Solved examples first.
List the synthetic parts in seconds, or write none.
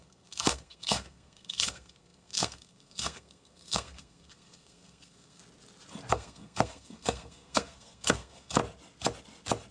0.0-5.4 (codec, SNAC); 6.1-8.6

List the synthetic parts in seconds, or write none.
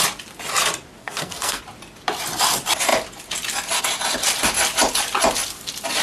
1.0-1.6 (codec, SNAC)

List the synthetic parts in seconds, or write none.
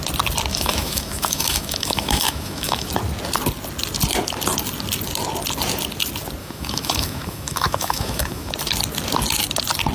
0.5-2.9 (autoencoder, DAC-VAE); 6.4-8.5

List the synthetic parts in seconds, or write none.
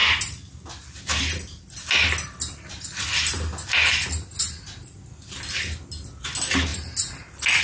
none